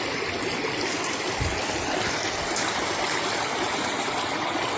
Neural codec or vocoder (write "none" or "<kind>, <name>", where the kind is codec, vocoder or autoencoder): none